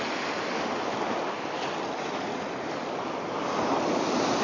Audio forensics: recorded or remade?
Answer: recorded